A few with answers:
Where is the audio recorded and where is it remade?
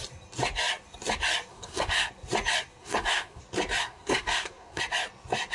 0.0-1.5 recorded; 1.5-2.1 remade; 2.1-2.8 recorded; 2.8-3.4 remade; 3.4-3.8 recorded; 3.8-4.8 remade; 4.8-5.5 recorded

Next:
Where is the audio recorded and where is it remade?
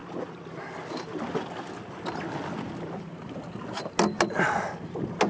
0.0-5.3 recorded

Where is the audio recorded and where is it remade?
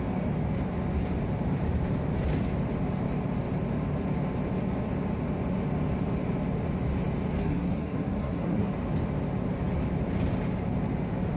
0.0-7.4 recorded; 7.4-8.7 remade; 8.7-11.4 recorded